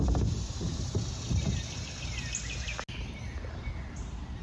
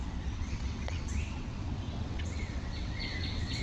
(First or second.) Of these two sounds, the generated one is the second